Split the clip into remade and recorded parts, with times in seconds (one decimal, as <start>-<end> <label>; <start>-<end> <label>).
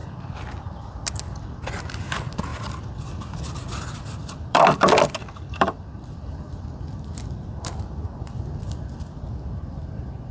0.0-1.7 remade; 1.7-2.5 recorded; 2.5-7.7 remade; 7.7-10.3 recorded